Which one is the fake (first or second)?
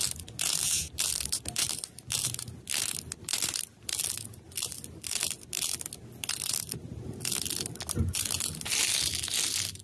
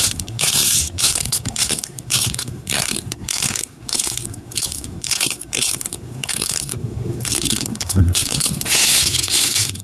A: second